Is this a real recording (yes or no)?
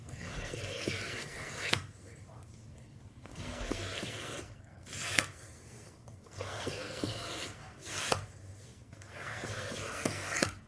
no